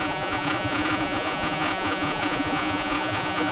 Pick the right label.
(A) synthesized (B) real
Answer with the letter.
A